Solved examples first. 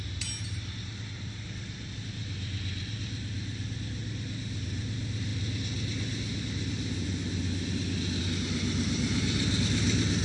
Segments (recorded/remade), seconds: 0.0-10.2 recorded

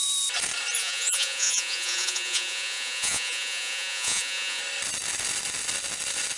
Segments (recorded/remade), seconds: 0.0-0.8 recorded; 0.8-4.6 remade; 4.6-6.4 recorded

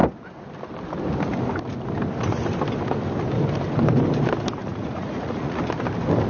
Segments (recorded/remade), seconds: 0.0-4.6 recorded; 4.6-5.6 remade; 5.6-6.3 recorded

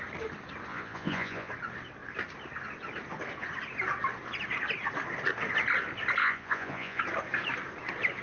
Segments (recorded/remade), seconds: 0.0-0.7 recorded; 0.7-1.5 remade; 1.5-6.2 recorded; 6.2-7.0 remade; 7.0-8.2 recorded

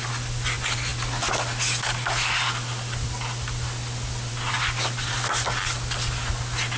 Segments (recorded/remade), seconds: 0.0-6.8 recorded

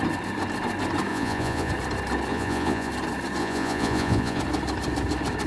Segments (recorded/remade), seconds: 0.0-1.1 recorded; 1.1-1.7 remade; 1.7-2.3 recorded; 2.3-2.9 remade; 2.9-3.4 recorded; 3.4-4.4 remade; 4.4-5.5 recorded

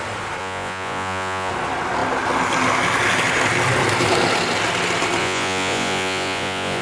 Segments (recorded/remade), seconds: 0.0-0.4 recorded; 0.4-1.5 remade; 1.5-5.2 recorded; 5.2-6.8 remade

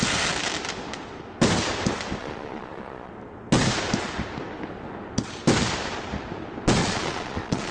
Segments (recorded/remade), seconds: 0.0-2.2 recorded; 2.2-3.1 remade; 3.1-6.8 recorded; 6.8-7.7 remade